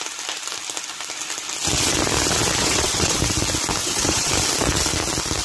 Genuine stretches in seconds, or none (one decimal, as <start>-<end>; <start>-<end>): 0.0-2.6; 3.2-3.8; 4.3-5.4